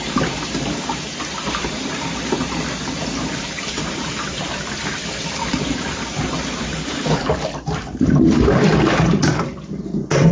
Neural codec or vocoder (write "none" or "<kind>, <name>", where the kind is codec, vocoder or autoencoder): vocoder, BigVGAN v2